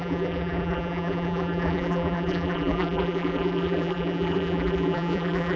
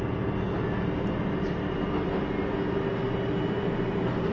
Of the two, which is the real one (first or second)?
second